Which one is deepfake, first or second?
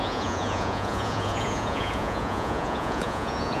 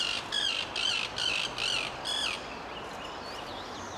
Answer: first